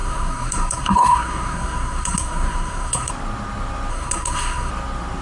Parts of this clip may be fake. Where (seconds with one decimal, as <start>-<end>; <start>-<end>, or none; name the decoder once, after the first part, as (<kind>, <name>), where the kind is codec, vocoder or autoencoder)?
0.0-3.1 (codec, SNAC); 3.9-4.7